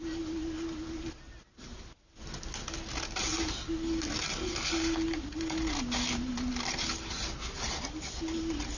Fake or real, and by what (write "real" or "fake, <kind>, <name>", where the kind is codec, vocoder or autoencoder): real